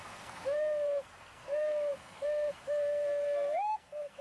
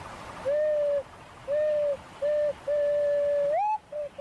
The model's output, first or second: first